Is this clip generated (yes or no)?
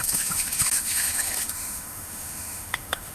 yes